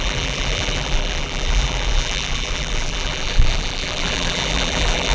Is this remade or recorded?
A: remade